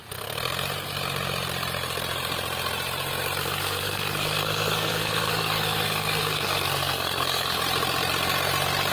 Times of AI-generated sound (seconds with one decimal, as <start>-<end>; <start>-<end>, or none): 3.4-7.6